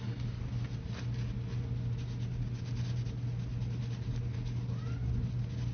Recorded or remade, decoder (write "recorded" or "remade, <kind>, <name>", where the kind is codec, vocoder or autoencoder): recorded